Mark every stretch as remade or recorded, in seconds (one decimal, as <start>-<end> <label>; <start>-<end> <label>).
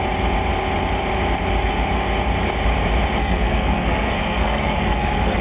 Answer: 0.0-3.2 recorded; 3.2-5.4 remade